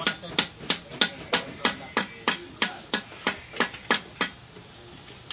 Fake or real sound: real